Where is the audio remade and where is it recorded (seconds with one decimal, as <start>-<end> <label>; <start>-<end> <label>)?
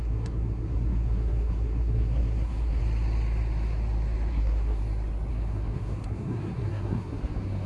0.0-2.8 remade; 2.8-4.3 recorded; 4.3-4.8 remade; 4.8-5.3 recorded; 5.3-7.7 remade